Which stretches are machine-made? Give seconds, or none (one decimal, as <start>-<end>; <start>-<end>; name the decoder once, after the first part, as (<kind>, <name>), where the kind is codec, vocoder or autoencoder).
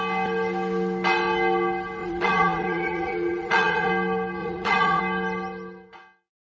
2.0-3.9 (vocoder, Vocos); 4.4-5.0